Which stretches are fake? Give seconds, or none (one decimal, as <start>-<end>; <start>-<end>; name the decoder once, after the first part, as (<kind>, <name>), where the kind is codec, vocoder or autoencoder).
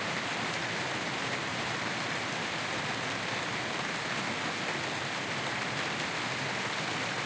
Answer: 1.5-2.0 (vocoder, BigVGAN v2)